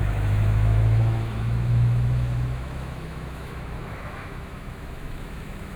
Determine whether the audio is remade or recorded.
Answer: remade